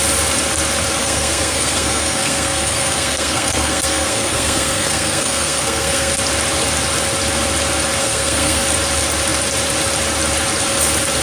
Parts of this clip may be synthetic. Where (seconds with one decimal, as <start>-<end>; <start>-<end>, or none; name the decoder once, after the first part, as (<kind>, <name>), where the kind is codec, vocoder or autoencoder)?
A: 1.0-6.1 (codec, SNAC); 8.0-8.6